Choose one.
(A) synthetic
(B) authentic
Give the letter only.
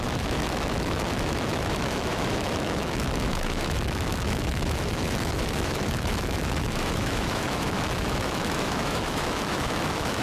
A